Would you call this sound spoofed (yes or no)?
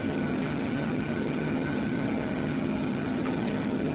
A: yes